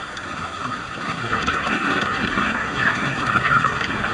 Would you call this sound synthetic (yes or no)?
yes